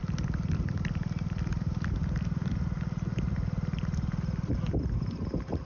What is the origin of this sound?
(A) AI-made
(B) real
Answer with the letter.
B